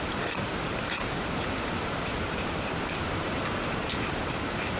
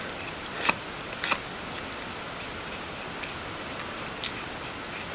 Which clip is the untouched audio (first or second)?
second